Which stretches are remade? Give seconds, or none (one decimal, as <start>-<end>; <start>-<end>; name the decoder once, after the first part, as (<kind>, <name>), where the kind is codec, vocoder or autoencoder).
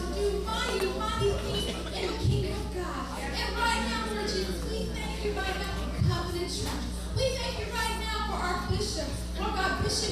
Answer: 5.1-5.6 (codec, SNAC)